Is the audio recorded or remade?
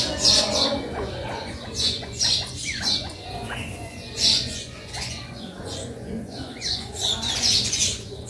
remade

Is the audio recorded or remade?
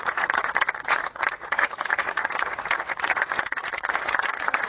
remade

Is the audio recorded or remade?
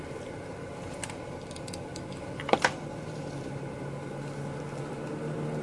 recorded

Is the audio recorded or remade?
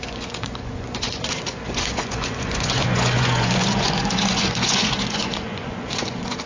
remade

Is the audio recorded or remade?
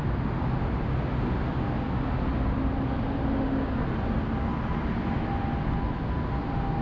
recorded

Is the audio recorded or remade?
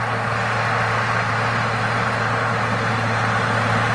recorded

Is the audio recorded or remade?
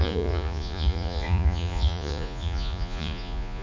remade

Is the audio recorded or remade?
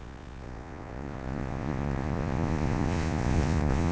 remade